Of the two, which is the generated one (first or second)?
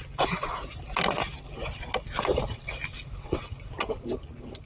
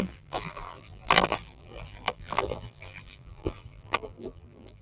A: second